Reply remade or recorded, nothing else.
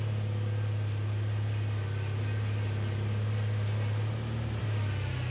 recorded